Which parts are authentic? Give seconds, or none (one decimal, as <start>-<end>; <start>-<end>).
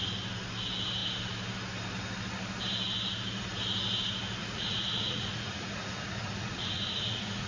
0.0-4.4